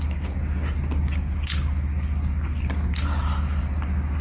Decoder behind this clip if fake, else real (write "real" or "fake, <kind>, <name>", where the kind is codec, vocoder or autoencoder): real